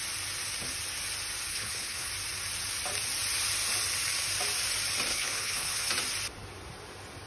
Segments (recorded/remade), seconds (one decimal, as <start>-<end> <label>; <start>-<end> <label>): 0.0-1.5 recorded; 1.5-2.1 remade; 2.1-5.1 recorded; 5.1-5.9 remade; 5.9-7.3 recorded